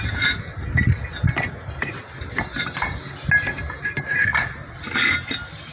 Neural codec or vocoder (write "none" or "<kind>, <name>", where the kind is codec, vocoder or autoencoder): none